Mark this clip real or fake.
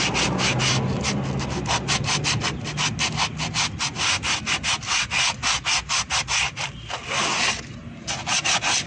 real